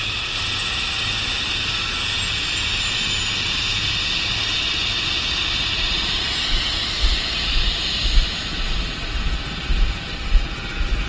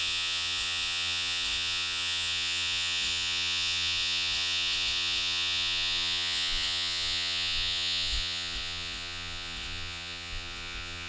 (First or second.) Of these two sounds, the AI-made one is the second